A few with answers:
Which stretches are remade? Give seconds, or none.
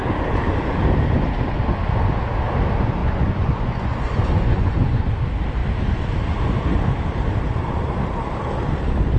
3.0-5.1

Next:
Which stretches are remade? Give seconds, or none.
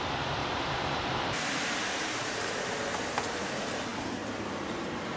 0.4-3.5; 3.9-5.2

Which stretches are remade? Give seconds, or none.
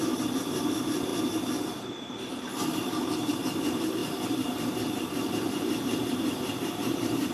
0.0-1.1; 1.7-7.3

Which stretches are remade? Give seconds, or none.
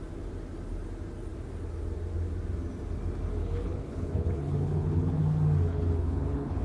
3.4-5.2; 5.7-6.6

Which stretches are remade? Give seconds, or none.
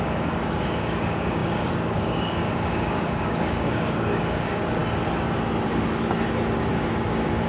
0.0-4.8; 6.7-7.5